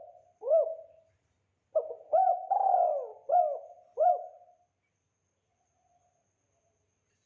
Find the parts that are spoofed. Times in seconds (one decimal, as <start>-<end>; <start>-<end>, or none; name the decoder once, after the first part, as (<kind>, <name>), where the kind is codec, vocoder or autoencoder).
none